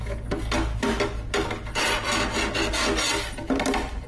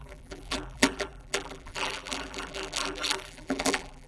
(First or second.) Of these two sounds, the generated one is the second